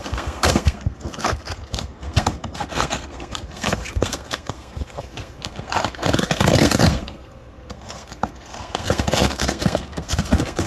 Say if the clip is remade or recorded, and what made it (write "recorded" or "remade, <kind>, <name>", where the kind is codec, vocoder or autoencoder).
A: remade, codec, SNAC